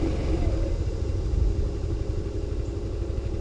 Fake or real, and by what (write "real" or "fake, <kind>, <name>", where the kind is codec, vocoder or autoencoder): real